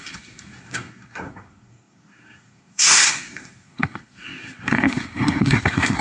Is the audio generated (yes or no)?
yes